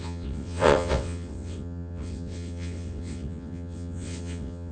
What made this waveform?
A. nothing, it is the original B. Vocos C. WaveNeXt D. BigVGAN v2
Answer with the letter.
C